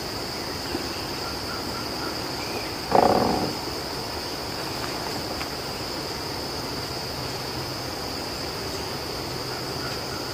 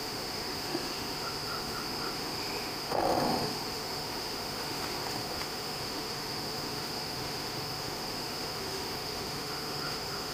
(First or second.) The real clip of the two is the first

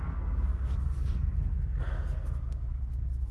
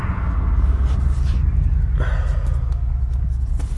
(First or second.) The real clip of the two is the second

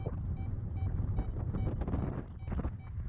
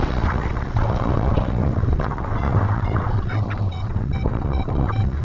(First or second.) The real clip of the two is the first